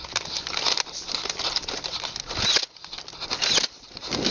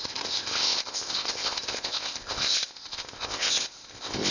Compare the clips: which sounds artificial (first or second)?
second